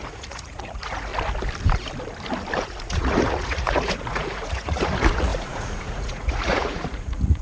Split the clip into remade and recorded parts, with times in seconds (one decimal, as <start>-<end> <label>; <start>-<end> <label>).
0.0-1.1 remade; 1.1-2.6 recorded; 2.6-7.4 remade